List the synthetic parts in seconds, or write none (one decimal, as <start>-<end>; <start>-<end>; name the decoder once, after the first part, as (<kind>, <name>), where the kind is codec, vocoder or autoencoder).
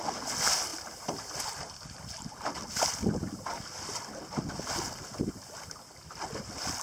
none